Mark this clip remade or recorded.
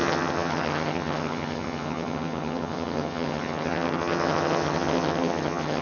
remade